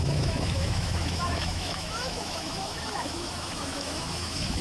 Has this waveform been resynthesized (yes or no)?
yes